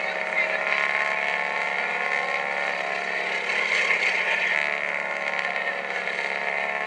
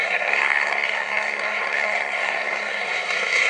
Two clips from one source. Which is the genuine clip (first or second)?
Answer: first